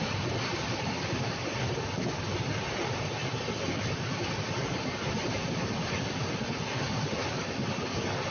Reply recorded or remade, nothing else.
recorded